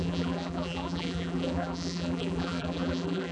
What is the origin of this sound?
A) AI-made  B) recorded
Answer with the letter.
A